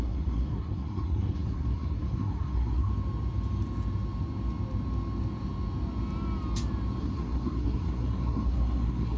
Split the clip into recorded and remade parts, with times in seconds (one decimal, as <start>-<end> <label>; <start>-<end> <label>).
0.0-2.9 remade; 2.9-7.0 recorded; 7.0-9.2 remade